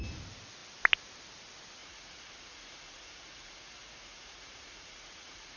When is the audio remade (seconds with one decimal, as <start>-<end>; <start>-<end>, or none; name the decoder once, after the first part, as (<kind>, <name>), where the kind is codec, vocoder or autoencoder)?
1.8-5.6 (vocoder, Vocos)